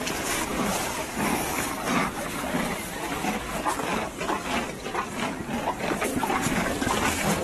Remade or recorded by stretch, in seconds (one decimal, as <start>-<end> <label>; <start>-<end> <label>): 0.0-7.4 recorded